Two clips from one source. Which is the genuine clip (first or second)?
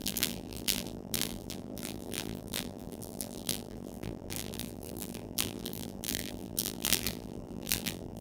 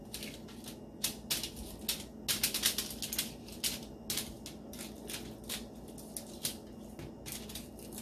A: second